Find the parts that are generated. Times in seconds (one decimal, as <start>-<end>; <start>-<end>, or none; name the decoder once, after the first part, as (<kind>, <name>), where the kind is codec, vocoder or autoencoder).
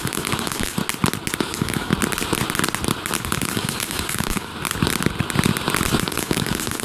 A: 0.0-0.8 (codec, DAC); 1.4-1.9; 3.2-4.5; 6.0-6.8